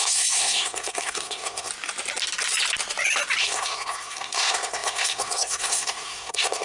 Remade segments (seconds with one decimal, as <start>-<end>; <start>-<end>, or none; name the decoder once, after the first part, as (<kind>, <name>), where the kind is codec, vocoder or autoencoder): 0.0-1.7 (codec, SNAC); 3.4-6.6